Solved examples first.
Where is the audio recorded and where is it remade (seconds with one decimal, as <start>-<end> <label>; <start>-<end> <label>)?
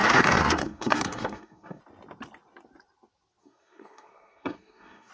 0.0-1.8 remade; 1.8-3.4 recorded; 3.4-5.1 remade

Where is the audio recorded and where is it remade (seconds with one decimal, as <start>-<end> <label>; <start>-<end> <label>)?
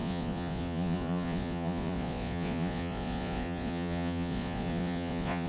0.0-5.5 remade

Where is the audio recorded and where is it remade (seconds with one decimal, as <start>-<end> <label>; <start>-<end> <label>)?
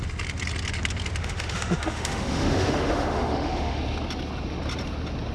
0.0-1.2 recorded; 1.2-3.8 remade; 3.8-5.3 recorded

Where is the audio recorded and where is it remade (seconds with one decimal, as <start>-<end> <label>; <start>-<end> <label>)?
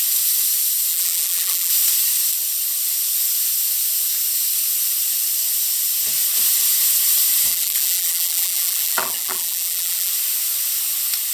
0.0-0.9 recorded; 0.9-1.7 remade; 1.7-7.5 recorded; 7.5-10.1 remade; 10.1-11.3 recorded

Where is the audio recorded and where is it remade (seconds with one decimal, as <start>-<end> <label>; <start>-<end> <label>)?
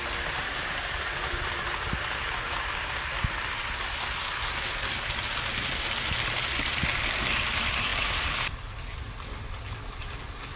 0.0-10.6 recorded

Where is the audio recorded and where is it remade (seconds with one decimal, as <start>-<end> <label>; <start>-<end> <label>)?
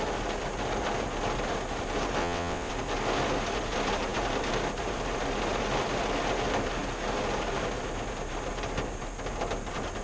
0.0-2.2 recorded; 2.2-2.7 remade; 2.7-10.0 recorded